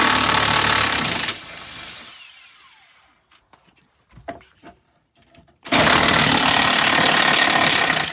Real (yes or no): no